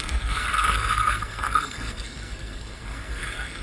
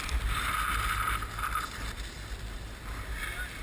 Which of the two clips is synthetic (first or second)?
first